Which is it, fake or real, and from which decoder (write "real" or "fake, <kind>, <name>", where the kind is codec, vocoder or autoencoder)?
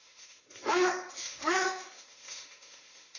fake, autoencoder, DAC-VAE